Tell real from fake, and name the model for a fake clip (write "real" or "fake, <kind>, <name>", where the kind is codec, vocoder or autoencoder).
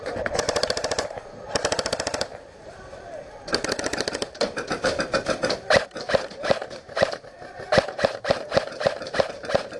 fake, vocoder, BigVGAN v2